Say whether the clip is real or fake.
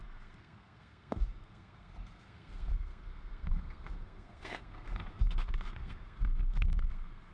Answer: fake